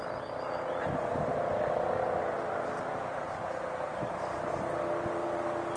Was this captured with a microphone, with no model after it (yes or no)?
yes